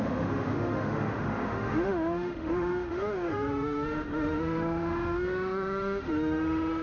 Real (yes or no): no